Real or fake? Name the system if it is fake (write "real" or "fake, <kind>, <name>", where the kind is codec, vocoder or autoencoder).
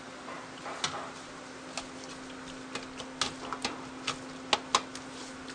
real